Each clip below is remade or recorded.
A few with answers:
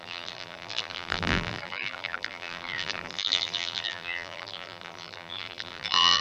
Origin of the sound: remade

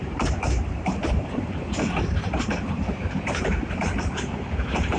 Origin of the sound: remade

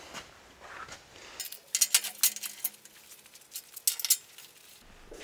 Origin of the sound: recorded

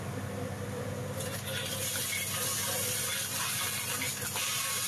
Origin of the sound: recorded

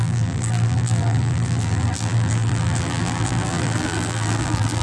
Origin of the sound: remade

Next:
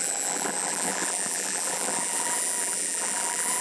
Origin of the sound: remade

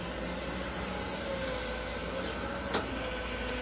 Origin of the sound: recorded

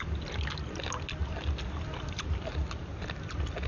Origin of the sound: recorded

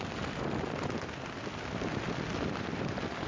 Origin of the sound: recorded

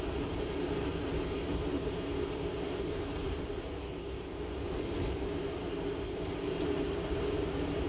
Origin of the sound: remade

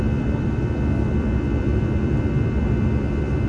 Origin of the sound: remade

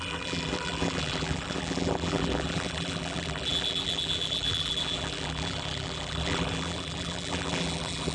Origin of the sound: remade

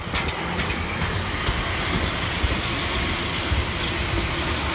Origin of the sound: recorded